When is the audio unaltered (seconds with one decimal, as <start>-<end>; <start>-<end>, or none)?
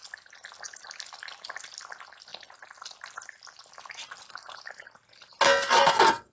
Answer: 0.0-6.3